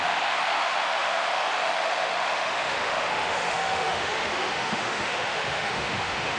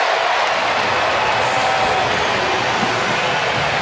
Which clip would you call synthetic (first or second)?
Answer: first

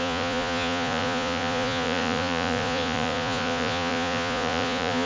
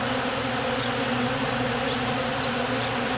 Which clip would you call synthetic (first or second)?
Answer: first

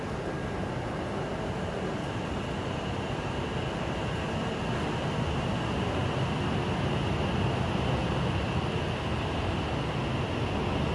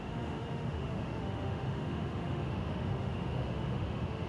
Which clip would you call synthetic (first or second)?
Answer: second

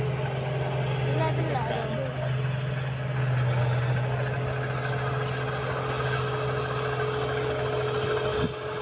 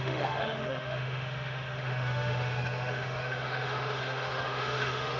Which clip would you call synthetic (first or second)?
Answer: second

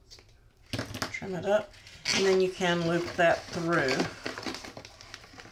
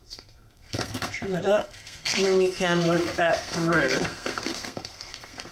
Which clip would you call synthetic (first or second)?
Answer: second